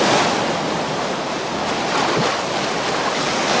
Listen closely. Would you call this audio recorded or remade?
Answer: recorded